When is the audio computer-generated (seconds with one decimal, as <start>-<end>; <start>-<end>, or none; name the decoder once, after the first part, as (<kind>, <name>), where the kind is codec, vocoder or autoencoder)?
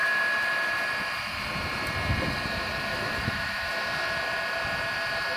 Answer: 2.9-3.7 (autoencoder, DAC-VAE)